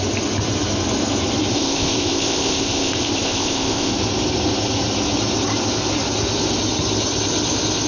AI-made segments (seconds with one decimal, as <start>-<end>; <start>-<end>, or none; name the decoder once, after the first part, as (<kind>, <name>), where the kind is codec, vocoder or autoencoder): 1.5-3.9 (codec, ZipCodec)